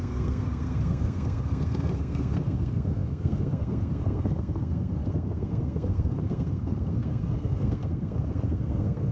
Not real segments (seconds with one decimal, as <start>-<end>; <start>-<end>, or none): 0.0-9.1